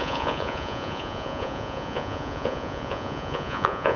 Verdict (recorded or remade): remade